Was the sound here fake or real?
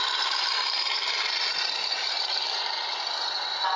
fake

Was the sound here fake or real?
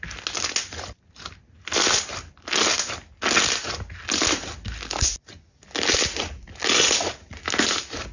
real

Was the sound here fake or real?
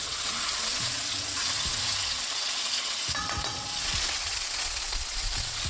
fake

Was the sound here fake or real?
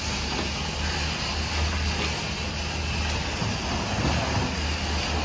real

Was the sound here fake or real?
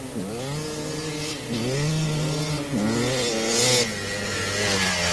real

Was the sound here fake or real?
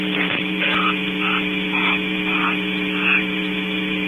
fake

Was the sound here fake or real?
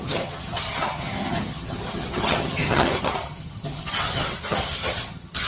fake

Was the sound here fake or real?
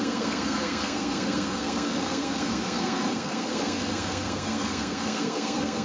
fake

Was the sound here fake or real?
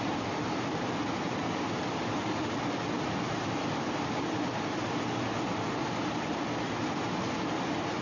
real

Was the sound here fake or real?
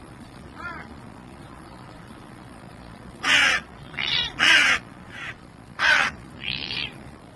fake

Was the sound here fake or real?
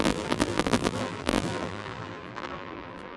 fake